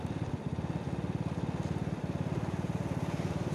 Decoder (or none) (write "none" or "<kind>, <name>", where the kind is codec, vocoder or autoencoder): none